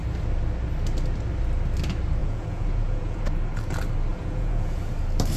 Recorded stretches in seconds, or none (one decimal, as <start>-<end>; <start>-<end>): 0.0-2.2; 3.2-4.1; 4.9-5.4